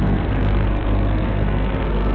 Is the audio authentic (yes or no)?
no